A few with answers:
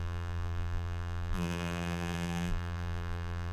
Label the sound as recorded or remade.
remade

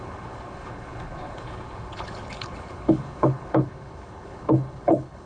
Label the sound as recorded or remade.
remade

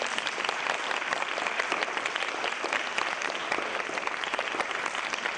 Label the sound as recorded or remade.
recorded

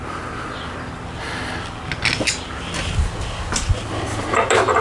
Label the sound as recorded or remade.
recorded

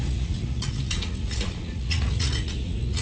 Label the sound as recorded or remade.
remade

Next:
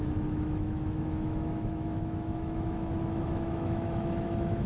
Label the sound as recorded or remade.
remade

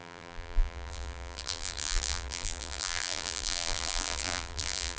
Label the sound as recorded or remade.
remade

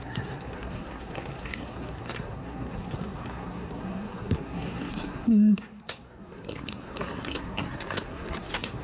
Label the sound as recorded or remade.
remade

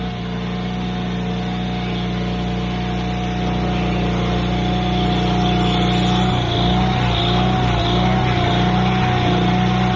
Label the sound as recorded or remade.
recorded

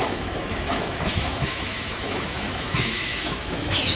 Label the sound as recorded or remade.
remade